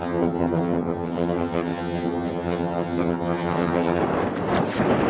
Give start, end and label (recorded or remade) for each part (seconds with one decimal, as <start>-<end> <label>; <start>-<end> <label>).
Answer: 0.0-4.0 remade; 4.0-5.1 recorded